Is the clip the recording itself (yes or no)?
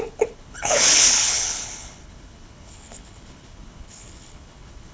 no